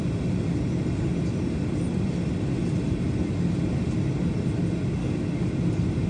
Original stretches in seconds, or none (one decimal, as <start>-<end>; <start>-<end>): 0.0-5.0; 5.5-6.1

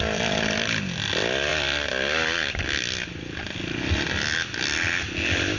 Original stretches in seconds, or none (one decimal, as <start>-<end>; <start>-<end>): 0.0-5.6

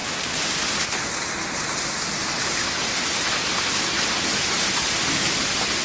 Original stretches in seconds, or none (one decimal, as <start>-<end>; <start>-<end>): 0.0-5.8

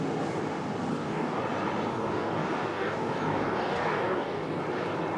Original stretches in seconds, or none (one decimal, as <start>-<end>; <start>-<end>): 0.0-0.9; 1.4-1.9; 4.6-5.2

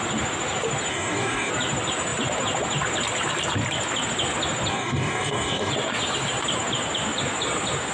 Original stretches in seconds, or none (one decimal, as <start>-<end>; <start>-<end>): 0.0-0.9; 1.5-4.7; 5.7-7.9

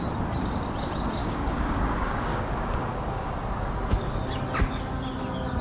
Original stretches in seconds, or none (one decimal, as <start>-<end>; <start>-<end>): 0.0-1.2; 3.3-5.6

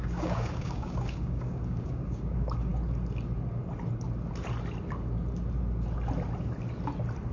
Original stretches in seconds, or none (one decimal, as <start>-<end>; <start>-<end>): 2.7-7.3